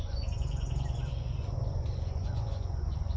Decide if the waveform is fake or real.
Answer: fake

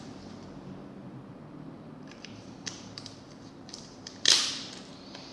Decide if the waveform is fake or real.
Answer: fake